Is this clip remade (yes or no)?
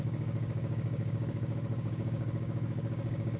yes